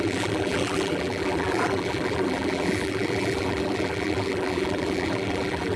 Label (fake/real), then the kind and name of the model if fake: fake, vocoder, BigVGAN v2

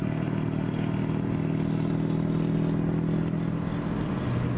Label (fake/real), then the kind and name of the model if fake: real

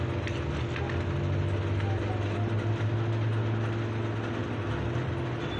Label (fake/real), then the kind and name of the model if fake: real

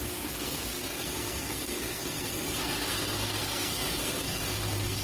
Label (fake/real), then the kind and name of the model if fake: fake, codec, SNAC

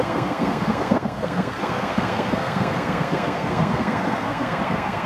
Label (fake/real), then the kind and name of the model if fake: fake, codec, SNAC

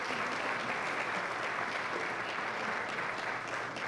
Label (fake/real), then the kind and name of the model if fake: real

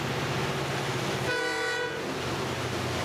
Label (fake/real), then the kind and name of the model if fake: real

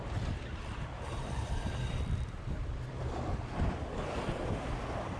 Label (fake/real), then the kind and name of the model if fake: fake, vocoder, BigVGAN v2